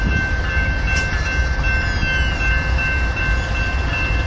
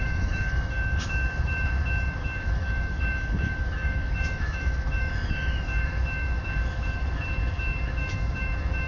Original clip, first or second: first